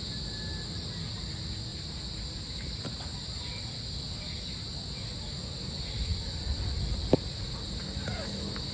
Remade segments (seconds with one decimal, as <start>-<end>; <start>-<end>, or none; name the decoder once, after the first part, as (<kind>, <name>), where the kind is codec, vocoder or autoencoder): 1.7-3.0 (vocoder, BigVGAN v2)